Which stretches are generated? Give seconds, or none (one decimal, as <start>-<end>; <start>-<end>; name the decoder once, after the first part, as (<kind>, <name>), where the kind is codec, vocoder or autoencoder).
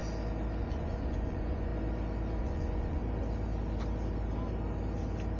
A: 0.6-1.7 (vocoder, Vocos); 2.4-3.0